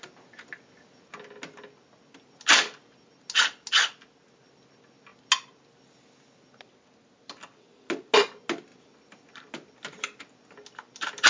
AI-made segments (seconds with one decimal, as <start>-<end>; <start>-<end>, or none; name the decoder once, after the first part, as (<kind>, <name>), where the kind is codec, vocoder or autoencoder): none